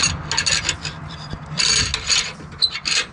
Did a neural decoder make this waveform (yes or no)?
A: no